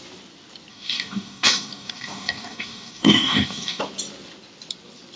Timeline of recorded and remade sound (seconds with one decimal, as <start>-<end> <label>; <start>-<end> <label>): 0.0-0.7 recorded; 0.7-3.8 remade; 3.8-5.2 recorded